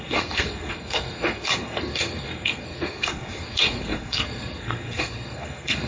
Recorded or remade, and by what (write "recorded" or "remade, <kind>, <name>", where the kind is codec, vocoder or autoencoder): remade, codec, SNAC